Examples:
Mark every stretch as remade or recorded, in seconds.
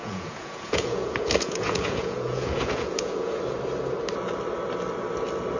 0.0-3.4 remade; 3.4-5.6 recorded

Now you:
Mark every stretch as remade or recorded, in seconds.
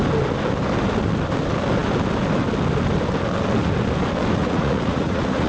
0.0-4.4 recorded; 4.4-5.5 remade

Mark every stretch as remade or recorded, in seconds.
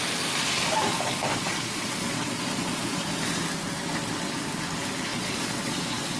0.0-1.3 recorded; 1.3-3.1 remade; 3.1-5.1 recorded; 5.1-6.2 remade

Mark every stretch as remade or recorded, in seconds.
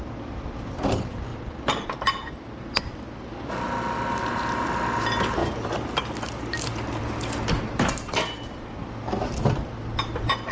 0.0-10.5 recorded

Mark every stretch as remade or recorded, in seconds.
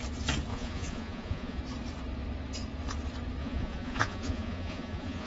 0.0-0.5 recorded; 0.5-1.6 remade; 1.6-3.4 recorded; 3.4-5.3 remade